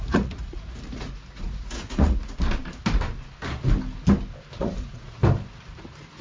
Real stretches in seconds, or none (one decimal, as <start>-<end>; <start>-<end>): 2.2-4.6; 5.2-6.2